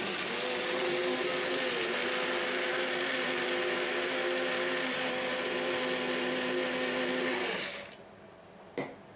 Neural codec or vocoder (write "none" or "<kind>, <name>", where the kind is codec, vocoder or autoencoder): none